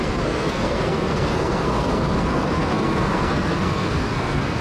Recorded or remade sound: remade